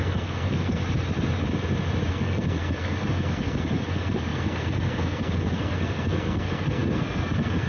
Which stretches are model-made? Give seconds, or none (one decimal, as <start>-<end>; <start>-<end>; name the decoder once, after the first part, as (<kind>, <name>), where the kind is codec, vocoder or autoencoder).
0.0-0.8 (codec, SNAC); 2.1-7.7